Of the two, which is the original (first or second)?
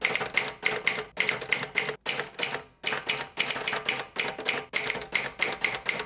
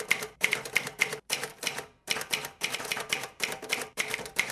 first